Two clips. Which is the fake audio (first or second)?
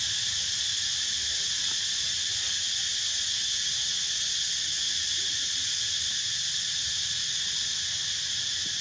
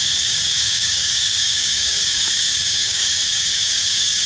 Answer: second